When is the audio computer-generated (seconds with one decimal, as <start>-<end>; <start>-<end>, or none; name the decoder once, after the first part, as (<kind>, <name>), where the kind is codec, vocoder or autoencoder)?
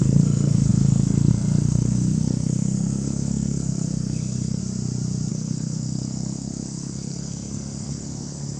0.0-4.6 (codec, SNAC); 5.3-8.6